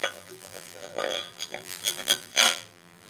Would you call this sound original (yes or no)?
no